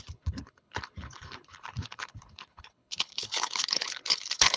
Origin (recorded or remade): remade